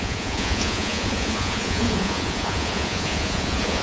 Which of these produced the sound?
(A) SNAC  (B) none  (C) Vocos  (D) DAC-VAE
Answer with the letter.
C